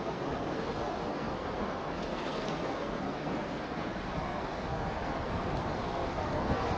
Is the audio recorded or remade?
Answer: remade